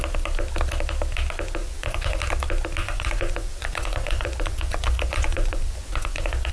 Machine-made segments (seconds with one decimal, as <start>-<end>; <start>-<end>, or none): 1.6-2.2; 2.8-6.5

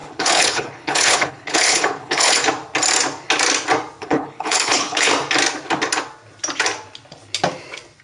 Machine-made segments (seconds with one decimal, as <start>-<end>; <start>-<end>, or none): 0.0-2.4; 4.0-5.1